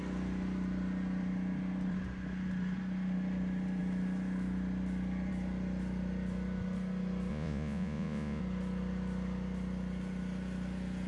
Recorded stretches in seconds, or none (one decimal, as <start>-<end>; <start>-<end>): 0.0-7.3; 8.4-11.1